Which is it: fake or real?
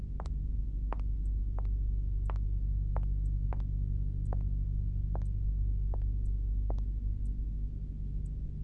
real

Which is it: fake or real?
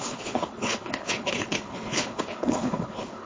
fake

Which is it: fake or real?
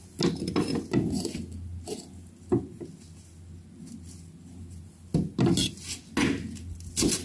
real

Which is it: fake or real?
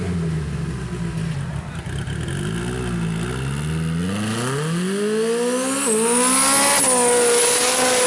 real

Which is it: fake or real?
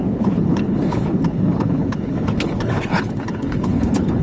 fake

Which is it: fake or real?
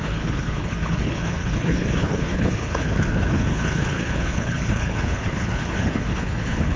fake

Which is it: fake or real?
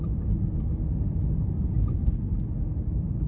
real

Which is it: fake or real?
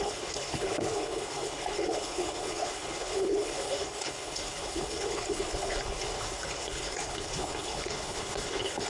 fake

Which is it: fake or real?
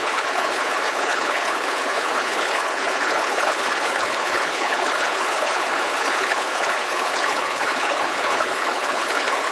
fake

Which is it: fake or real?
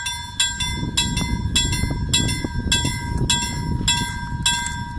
real